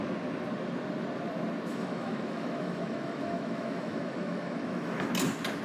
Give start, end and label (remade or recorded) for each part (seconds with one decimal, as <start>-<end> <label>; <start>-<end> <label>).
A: 0.0-1.7 recorded; 1.7-5.1 remade; 5.1-5.6 recorded